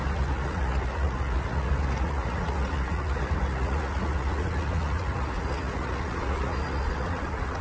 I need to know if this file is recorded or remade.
remade